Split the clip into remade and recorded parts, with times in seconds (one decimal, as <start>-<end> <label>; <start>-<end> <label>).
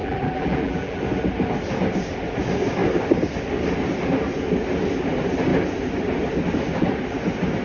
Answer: 0.0-1.0 remade; 1.0-7.6 recorded